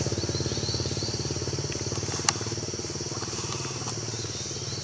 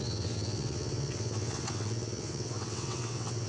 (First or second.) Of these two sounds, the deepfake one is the second